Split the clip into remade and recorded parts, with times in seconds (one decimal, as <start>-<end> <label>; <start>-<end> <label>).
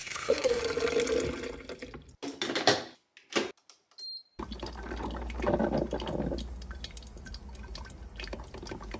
0.0-0.6 remade; 0.6-9.0 recorded